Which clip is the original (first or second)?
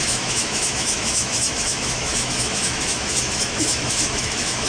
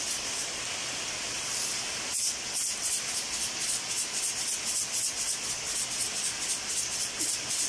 second